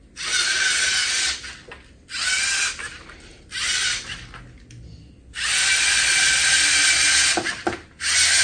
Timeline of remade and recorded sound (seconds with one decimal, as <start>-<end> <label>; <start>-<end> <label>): 0.0-8.4 recorded

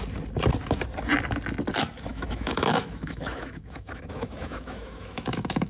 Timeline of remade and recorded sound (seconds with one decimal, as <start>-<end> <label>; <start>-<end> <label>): 0.0-2.1 recorded; 2.1-5.7 remade

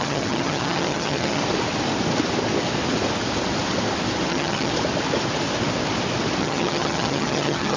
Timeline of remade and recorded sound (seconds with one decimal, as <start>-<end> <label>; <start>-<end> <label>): 0.0-1.4 remade; 1.4-4.3 recorded; 4.3-4.7 remade; 4.7-6.4 recorded; 6.4-7.8 remade

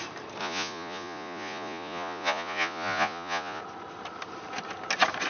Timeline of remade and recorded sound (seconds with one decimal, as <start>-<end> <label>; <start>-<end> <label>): 0.0-0.4 recorded; 0.4-3.6 remade; 3.6-5.3 recorded

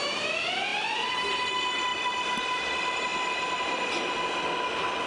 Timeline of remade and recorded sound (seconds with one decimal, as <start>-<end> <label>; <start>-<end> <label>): 0.0-0.7 recorded; 0.7-1.5 remade; 1.5-1.9 recorded; 1.9-2.5 remade; 2.5-5.1 recorded

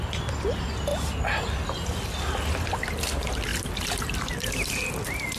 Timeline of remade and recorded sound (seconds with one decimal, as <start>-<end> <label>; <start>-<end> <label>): 0.0-0.9 remade; 0.9-2.9 recorded; 2.9-5.4 remade

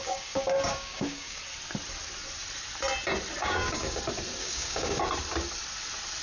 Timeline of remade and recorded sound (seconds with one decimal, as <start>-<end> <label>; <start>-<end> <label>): 0.0-1.4 remade; 1.4-3.4 recorded; 3.4-4.0 remade; 4.0-4.4 recorded; 4.4-5.0 remade; 5.0-6.2 recorded